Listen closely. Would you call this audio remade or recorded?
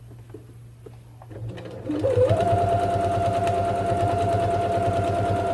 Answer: recorded